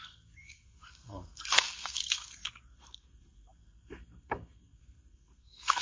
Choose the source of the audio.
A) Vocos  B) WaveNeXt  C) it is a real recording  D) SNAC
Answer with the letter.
D